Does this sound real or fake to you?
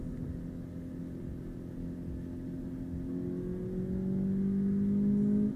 real